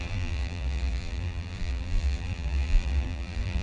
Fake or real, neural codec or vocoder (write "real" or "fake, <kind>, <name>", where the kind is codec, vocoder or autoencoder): fake, vocoder, BigVGAN v2